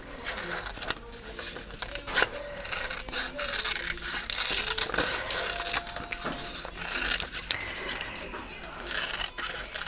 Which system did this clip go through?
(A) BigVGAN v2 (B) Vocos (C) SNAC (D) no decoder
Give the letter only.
D